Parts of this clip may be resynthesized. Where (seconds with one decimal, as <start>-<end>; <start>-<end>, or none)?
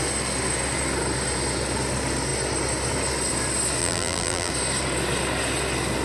3.8-4.5